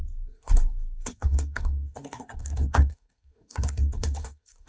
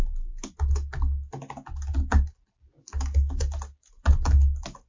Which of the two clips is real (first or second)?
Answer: second